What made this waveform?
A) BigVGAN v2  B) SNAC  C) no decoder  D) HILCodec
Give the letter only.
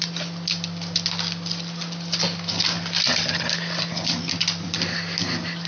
C